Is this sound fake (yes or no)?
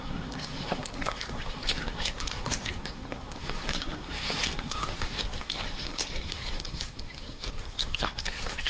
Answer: yes